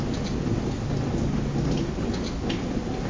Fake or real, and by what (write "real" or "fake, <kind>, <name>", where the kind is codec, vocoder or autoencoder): real